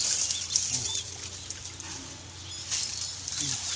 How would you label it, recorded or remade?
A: recorded